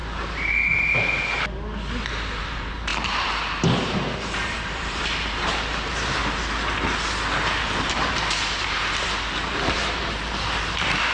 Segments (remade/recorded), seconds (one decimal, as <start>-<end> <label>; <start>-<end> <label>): 0.0-2.4 recorded; 2.4-6.2 remade; 6.2-7.6 recorded; 7.6-11.1 remade